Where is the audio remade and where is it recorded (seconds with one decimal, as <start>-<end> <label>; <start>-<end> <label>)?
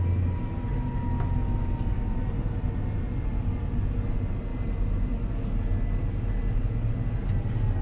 0.0-7.8 recorded